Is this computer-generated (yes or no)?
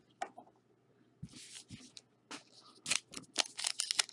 no